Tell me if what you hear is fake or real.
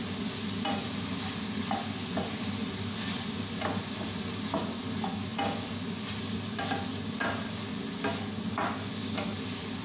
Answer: real